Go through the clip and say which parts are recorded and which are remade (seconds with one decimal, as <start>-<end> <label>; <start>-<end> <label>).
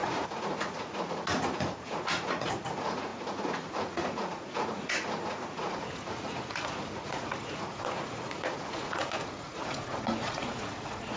0.0-11.2 remade